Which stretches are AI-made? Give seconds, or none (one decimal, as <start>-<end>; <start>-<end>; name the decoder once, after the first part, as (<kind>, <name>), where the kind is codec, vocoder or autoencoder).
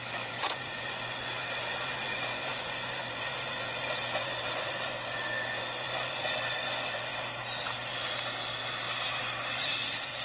0.0-7.1 (vocoder, Vocos); 9.2-10.2